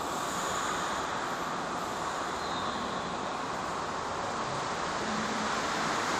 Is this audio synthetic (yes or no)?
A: no